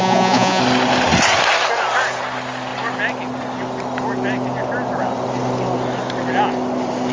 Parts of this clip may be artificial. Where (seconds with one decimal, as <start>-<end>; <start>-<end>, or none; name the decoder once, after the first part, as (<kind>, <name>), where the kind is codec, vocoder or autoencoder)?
0.0-0.6 (vocoder, Vocos)